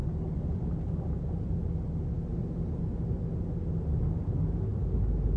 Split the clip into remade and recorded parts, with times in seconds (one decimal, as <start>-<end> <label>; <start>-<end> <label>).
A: 0.0-1.8 remade; 1.8-2.3 recorded; 2.3-2.8 remade; 2.8-4.7 recorded; 4.7-5.4 remade